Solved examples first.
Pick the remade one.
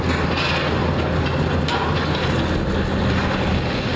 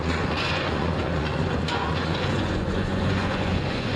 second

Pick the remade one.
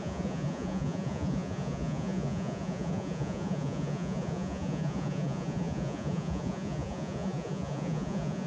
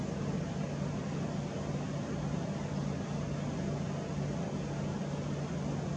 first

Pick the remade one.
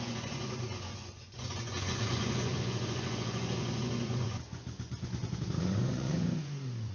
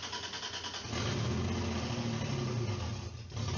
first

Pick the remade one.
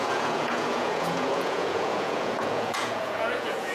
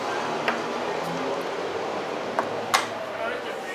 first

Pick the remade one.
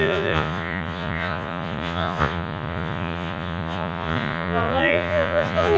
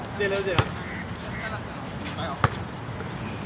first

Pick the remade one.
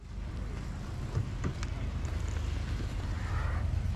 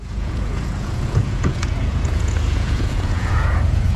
second